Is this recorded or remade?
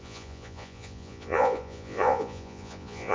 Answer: remade